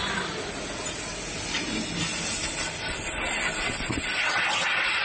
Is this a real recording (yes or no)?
yes